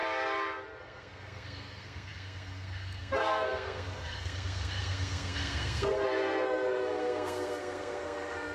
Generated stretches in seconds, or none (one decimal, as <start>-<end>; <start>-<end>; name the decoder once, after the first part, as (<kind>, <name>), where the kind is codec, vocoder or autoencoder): 0.8-8.5 (codec, SNAC)